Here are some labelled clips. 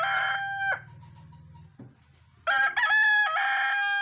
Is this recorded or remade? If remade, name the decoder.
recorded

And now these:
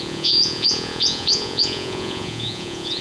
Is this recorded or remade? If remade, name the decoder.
remade, vocoder, Vocos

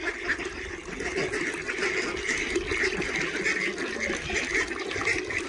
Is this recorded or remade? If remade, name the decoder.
recorded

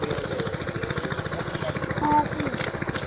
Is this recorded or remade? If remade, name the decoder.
recorded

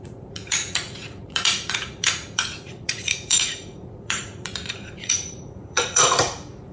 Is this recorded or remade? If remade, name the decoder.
remade, vocoder, Vocos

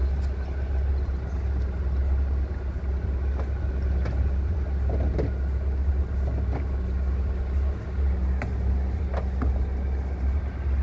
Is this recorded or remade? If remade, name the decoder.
recorded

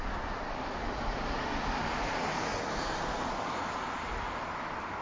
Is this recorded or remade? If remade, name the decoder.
recorded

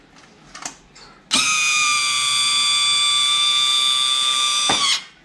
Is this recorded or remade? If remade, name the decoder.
recorded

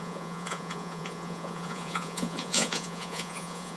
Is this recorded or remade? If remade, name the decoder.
remade, vocoder, Vocos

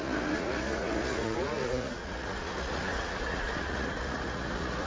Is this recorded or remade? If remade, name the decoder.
remade, vocoder, Vocos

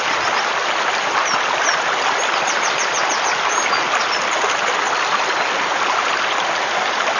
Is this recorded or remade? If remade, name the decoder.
recorded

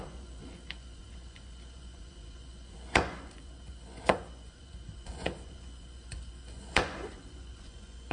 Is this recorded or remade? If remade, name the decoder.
remade, vocoder, Vocos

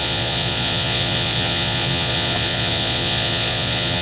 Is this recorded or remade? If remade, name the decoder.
remade, vocoder, Vocos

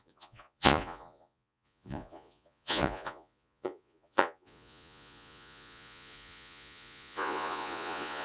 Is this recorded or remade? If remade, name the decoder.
remade, vocoder, Vocos